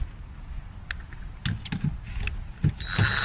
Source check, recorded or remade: recorded